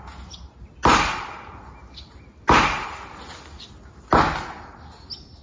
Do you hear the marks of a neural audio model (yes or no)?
no